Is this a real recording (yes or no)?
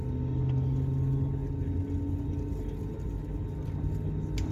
yes